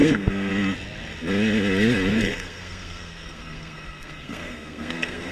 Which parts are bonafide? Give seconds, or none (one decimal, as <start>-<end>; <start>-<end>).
0.5-2.1